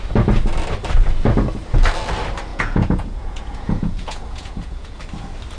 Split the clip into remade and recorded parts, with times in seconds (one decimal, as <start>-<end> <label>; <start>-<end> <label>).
0.0-2.5 recorded; 2.5-5.0 remade; 5.0-5.6 recorded